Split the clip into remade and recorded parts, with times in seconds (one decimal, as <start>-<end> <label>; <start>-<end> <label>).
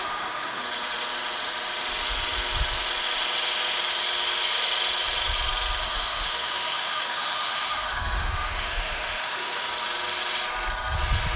0.0-0.6 remade; 0.6-5.8 recorded; 5.8-9.7 remade; 9.7-11.4 recorded